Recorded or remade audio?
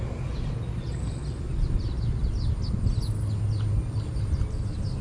recorded